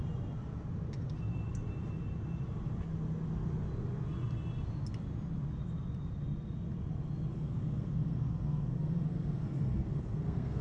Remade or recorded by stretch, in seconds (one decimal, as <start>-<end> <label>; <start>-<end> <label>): 0.0-7.3 recorded; 7.3-10.6 remade